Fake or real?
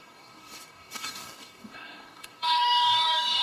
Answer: fake